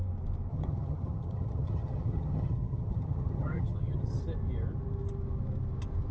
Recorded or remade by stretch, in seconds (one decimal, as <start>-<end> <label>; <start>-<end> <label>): 0.0-0.5 recorded; 0.5-4.2 remade; 4.2-6.1 recorded